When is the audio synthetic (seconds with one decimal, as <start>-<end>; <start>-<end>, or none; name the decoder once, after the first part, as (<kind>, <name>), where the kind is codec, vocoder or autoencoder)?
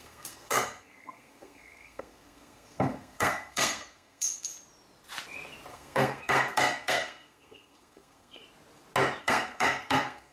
0.0-4.5 (codec, SNAC); 5.7-8.4; 9.2-10.3